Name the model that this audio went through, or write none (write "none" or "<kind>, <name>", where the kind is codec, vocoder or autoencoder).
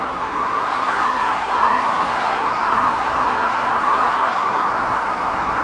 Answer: codec, SNAC